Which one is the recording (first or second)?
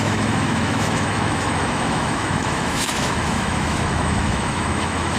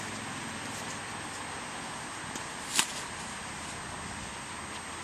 second